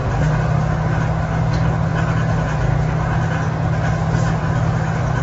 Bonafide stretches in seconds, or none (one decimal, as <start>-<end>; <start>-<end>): 0.0-5.2